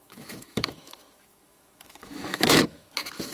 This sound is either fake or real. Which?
fake